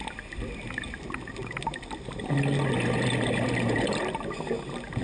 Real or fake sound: real